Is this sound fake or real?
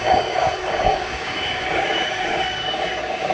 fake